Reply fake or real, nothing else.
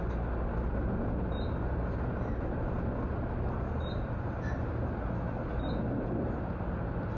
real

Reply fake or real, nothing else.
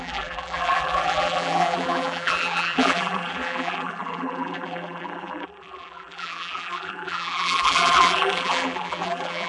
fake